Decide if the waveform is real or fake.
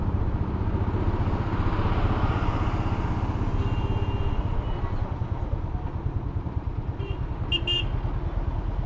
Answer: real